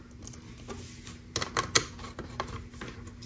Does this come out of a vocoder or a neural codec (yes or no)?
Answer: no